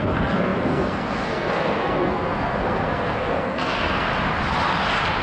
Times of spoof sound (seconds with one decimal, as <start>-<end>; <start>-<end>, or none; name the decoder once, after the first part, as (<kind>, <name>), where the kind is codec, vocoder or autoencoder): 0.0-4.1 (codec, SNAC)